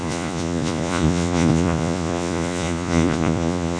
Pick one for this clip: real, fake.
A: fake